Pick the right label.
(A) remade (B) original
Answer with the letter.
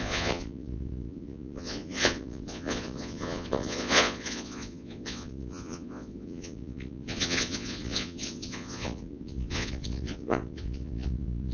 A